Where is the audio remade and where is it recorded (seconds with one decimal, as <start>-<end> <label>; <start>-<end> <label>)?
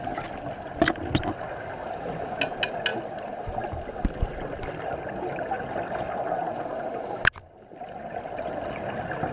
0.0-9.3 recorded